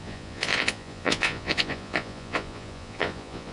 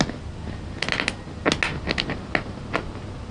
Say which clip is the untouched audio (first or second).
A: second